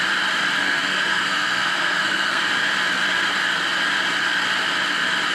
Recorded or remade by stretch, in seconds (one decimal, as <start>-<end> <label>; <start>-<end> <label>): 0.0-0.6 recorded; 0.6-2.4 remade; 2.4-5.3 recorded